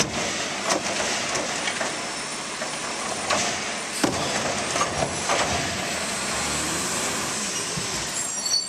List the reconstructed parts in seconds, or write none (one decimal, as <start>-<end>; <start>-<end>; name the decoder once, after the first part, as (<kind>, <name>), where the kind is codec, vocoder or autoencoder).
none